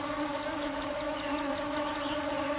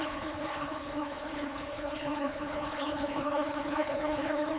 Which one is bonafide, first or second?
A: first